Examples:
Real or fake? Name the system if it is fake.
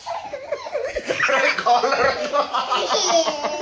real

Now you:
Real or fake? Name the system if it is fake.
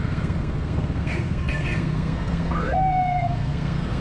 fake, codec, SNAC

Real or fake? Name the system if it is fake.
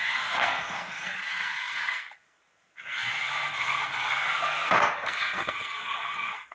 fake, codec, SNAC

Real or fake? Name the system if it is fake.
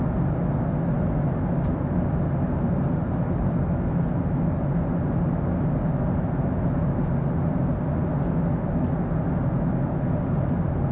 real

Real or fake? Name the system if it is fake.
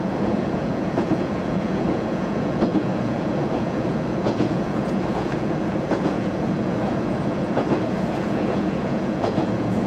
fake, vocoder, Vocos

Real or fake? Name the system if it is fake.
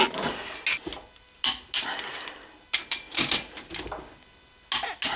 real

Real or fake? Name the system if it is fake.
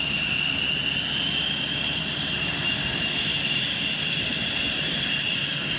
real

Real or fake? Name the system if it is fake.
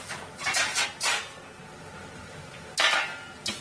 real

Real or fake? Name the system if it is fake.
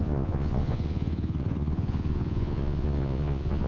fake, vocoder, Vocos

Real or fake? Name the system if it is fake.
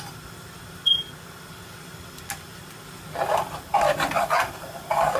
real